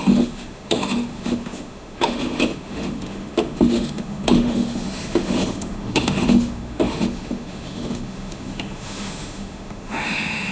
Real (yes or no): no